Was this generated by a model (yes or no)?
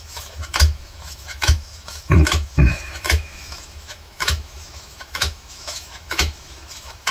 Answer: yes